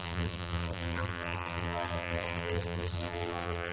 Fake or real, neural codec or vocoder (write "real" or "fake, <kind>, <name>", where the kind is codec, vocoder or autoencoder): fake, vocoder, BigVGAN v2